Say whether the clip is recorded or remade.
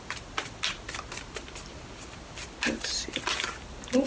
recorded